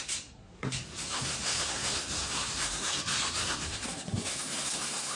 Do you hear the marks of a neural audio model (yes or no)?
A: yes